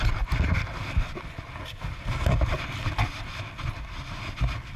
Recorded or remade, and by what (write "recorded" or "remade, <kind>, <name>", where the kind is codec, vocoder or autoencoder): recorded